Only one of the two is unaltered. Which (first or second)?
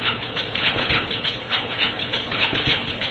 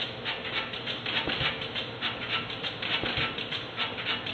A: second